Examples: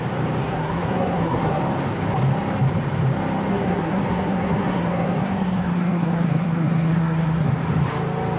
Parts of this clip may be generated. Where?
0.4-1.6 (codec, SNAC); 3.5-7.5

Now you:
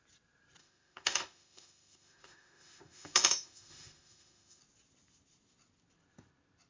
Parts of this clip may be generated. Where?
0.6-4.6 (autoencoder, DAC-VAE)

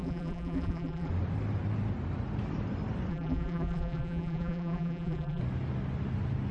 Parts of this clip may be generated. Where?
0.0-1.1 (vocoder, BigVGAN v2); 3.1-5.4

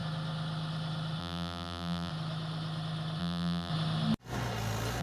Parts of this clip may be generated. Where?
1.2-2.1 (vocoder, BigVGAN v2); 3.2-3.7